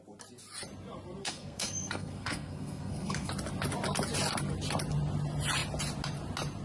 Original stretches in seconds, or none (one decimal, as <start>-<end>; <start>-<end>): 0.0-1.2; 3.3-6.6